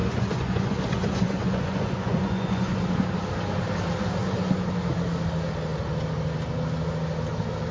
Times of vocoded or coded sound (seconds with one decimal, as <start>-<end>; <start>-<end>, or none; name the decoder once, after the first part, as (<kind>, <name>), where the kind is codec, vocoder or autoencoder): 0.0-2.8 (vocoder, Vocos)